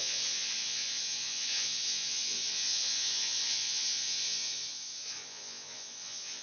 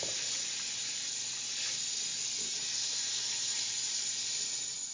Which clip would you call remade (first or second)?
first